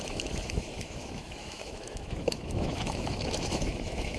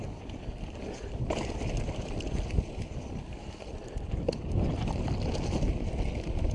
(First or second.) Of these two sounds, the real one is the second